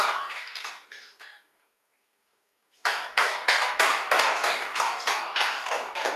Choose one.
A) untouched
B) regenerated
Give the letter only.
B